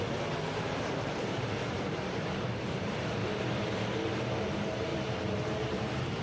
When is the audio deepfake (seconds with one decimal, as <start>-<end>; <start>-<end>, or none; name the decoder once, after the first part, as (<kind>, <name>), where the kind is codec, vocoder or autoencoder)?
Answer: 0.0-6.2 (vocoder, BigVGAN v2)